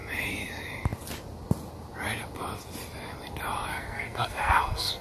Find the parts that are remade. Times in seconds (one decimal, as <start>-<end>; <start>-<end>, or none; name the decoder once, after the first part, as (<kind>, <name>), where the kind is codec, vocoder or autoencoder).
3.7-5.0 (codec, SNAC)